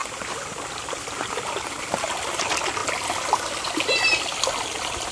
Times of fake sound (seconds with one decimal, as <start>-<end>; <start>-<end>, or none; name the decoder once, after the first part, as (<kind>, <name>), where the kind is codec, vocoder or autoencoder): 0.0-2.4 (vocoder, BigVGAN v2)